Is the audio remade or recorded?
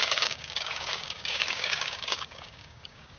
remade